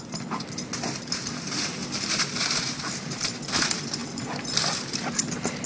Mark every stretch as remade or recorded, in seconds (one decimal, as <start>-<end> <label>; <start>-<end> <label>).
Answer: 0.0-1.8 recorded; 1.8-2.4 remade; 2.4-4.0 recorded; 4.0-5.3 remade; 5.3-5.7 recorded